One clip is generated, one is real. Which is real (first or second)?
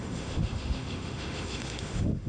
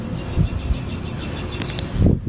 second